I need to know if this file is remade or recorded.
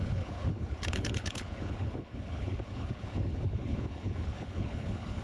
remade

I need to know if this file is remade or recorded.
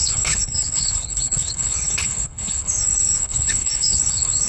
remade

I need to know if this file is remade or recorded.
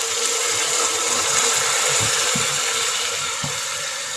recorded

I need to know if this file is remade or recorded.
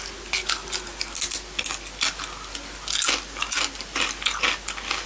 recorded